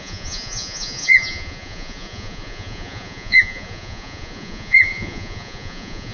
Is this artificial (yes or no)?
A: yes